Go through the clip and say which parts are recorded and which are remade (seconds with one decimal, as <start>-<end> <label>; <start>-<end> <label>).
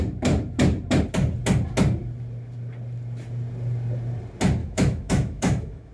0.0-4.6 recorded; 4.6-5.9 remade